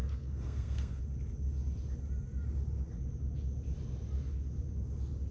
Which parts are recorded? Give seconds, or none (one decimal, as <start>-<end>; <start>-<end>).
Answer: 1.0-5.3